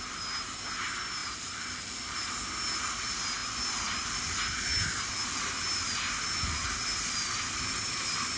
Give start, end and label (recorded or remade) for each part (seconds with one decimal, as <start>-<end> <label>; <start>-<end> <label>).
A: 0.0-1.2 recorded; 1.2-2.0 remade; 2.0-8.4 recorded